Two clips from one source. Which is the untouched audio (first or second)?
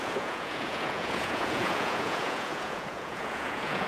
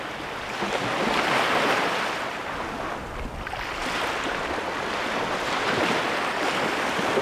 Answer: second